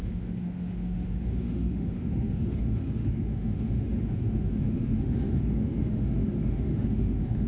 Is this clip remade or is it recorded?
remade